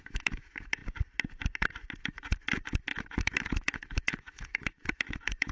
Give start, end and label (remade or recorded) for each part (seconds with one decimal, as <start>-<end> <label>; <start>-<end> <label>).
0.0-0.8 remade; 0.8-2.0 recorded; 2.0-5.5 remade